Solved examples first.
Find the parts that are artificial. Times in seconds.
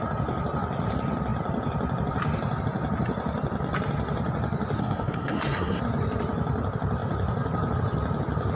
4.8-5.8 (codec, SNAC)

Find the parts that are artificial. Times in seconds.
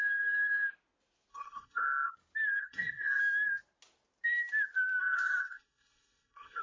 1.3-2.1 (codec, SNAC); 2.6-3.2; 5.0-6.6